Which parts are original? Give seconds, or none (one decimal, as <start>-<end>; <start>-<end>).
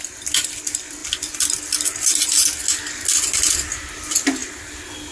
0.0-5.1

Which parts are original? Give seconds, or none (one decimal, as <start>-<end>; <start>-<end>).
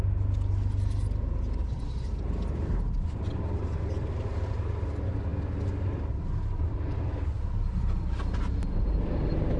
0.0-9.6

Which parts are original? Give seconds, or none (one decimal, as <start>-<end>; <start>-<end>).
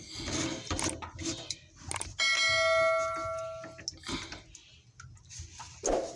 0.0-6.2